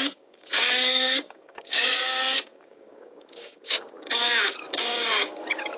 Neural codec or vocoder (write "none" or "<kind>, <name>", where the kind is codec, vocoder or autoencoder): codec, DAC